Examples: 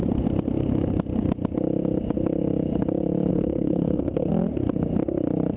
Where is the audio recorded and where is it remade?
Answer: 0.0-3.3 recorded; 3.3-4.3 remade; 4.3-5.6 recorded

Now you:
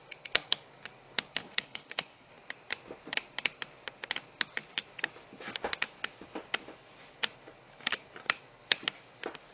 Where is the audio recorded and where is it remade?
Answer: 0.0-1.4 recorded; 1.4-2.3 remade; 2.3-9.5 recorded